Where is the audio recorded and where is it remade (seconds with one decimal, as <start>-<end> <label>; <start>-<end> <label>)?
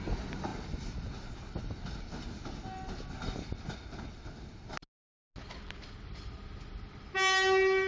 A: 0.0-7.9 recorded